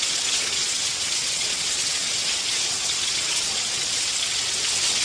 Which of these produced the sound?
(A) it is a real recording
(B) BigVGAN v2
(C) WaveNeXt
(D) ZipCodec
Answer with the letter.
C